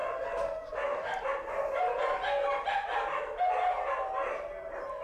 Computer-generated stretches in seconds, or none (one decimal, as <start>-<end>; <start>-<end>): none